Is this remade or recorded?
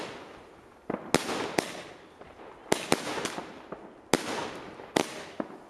recorded